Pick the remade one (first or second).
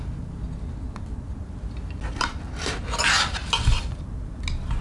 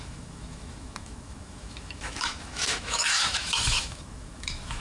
second